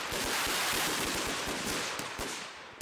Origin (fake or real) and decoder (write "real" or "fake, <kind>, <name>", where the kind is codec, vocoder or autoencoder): fake, vocoder, BigVGAN v2